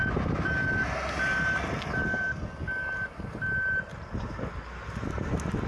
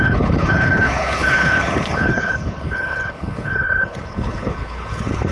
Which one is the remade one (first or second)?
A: second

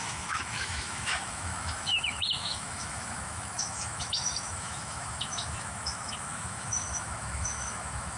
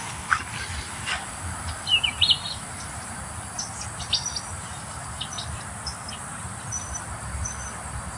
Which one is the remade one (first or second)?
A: first